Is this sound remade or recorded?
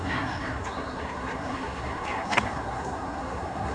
remade